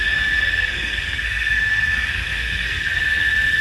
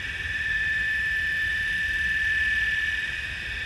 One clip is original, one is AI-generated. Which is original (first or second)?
second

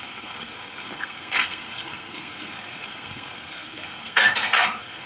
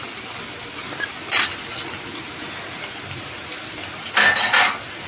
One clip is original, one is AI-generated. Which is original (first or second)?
second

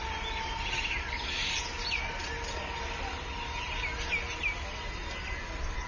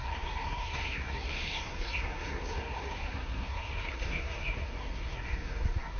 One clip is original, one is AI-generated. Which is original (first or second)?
first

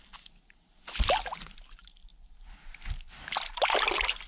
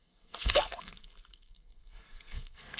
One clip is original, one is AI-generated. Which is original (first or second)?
first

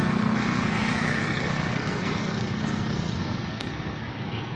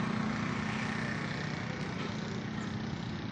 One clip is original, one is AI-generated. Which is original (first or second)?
second